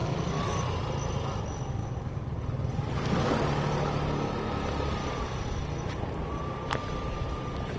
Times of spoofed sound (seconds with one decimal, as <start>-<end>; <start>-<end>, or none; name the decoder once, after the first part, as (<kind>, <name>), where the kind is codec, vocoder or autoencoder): none